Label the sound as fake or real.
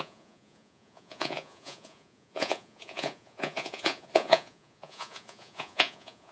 fake